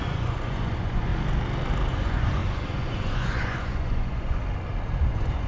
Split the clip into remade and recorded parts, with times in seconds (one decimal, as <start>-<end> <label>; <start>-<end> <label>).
0.0-1.1 remade; 1.1-1.9 recorded; 1.9-4.4 remade; 4.4-5.0 recorded; 5.0-5.5 remade